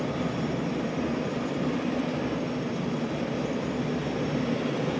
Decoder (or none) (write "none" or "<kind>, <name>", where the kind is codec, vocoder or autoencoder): none